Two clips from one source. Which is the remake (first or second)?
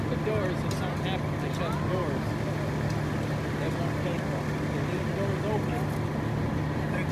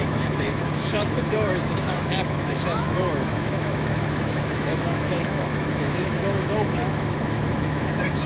second